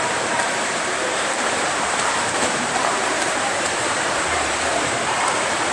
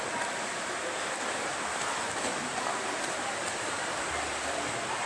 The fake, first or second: first